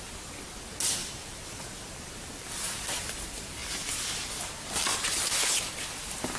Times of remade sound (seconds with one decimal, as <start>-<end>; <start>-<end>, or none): 1.0-3.2; 3.6-4.1